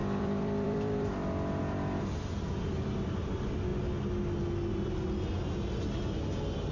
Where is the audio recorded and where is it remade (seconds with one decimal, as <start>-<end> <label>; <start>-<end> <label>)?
0.0-1.6 remade; 1.6-6.7 recorded